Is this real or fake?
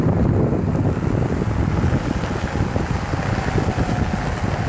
real